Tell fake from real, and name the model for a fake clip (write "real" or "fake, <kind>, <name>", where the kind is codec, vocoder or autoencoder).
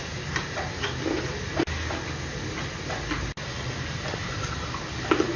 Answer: real